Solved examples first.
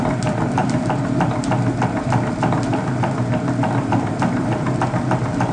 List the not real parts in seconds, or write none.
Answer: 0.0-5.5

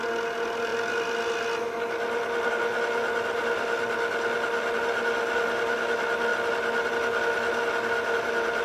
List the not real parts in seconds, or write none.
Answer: none

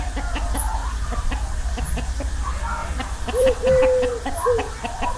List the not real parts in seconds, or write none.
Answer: 0.8-1.9; 2.8-3.8

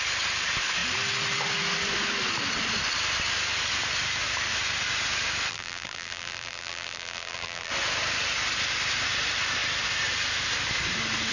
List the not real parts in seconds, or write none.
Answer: 5.5-7.7

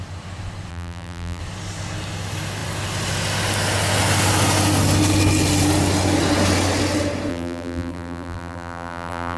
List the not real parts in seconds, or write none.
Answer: 0.7-1.4; 7.3-9.4

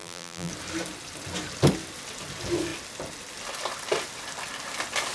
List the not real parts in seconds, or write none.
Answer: 0.0-0.5

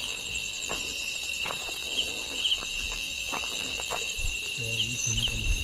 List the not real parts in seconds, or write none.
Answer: 0.0-0.8; 1.8-4.1

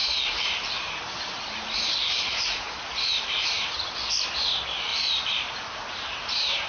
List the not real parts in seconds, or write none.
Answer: 0.0-3.9; 4.9-6.7